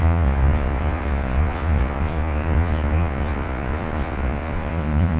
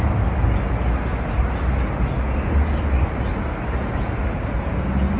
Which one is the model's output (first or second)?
first